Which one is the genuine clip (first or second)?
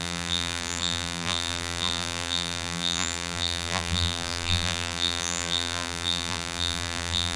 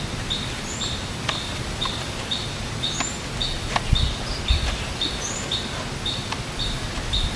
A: second